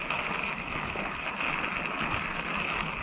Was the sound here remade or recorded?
recorded